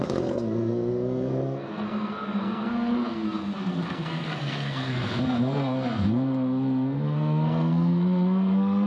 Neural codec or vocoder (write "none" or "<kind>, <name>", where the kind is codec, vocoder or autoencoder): codec, SNAC